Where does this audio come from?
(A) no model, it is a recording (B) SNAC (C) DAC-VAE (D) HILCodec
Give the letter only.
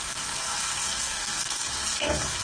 B